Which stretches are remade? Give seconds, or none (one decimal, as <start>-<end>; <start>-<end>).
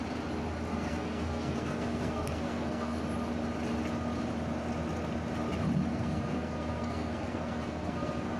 0.7-3.0; 5.9-8.4